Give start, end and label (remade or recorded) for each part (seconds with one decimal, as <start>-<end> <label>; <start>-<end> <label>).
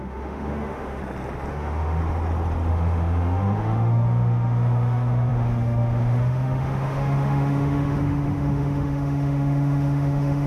0.0-1.0 remade; 1.0-1.5 recorded; 1.5-2.0 remade; 2.0-2.7 recorded; 2.7-10.5 remade